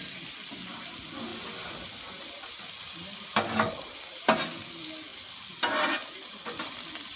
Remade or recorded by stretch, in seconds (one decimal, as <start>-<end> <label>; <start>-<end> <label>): 0.0-7.2 recorded